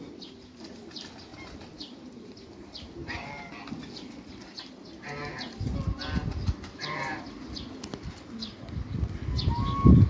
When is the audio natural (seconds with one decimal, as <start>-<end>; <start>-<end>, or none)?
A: 0.0-1.3; 3.3-10.1